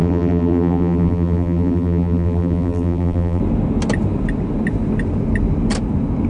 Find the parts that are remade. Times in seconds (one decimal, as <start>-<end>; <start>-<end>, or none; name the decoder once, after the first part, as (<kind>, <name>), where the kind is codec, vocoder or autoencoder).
0.0-3.4 (vocoder, BigVGAN v2)